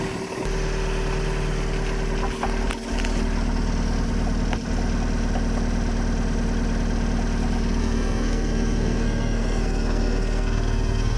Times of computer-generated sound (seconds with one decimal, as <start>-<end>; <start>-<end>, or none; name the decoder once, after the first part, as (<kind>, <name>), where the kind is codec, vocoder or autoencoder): 7.8-11.2 (codec, SNAC)